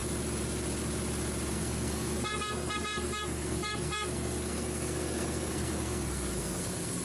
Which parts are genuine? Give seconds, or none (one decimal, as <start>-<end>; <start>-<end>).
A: 0.0-1.5

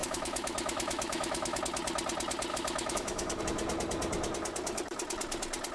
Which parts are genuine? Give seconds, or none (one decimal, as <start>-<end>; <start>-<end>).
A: 1.6-2.5; 3.4-5.7

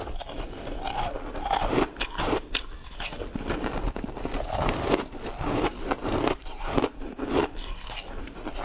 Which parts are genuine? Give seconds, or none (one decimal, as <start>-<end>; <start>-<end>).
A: 0.0-6.0; 7.5-8.6